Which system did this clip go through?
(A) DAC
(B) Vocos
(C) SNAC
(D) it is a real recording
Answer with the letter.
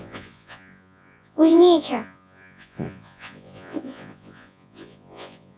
B